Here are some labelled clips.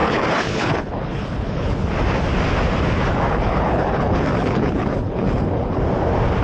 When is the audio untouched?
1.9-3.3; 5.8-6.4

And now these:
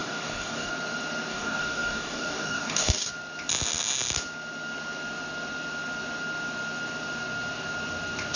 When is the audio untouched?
0.7-1.3; 3.1-8.4